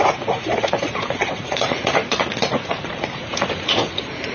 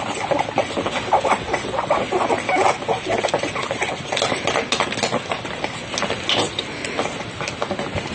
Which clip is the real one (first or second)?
second